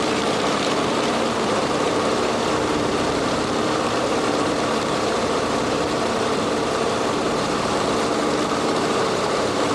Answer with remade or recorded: remade